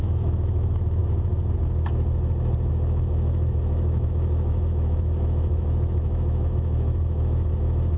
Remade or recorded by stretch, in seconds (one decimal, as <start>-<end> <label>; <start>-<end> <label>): 0.0-1.0 remade; 1.0-2.7 recorded; 2.7-8.0 remade